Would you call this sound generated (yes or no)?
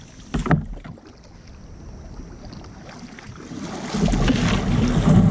no